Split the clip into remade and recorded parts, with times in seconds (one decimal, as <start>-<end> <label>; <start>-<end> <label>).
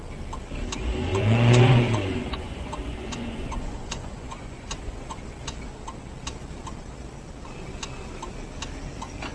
0.0-1.1 recorded; 1.1-5.2 remade; 5.2-9.3 recorded